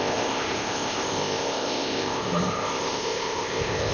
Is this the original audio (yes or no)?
no